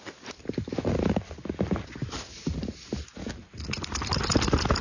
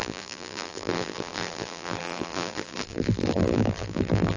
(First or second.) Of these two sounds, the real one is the first